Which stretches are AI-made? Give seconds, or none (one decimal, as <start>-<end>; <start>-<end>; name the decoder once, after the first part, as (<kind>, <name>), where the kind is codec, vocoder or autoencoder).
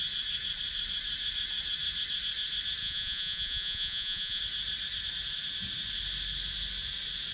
2.8-4.4 (vocoder, Vocos)